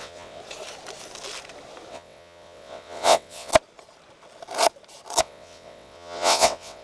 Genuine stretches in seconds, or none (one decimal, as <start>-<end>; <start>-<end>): 0.4-1.9; 3.5-5.2